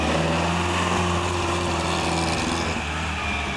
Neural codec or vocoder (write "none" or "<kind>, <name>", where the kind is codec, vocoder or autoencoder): none